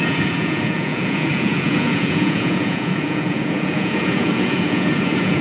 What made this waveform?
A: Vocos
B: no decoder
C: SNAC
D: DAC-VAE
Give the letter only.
A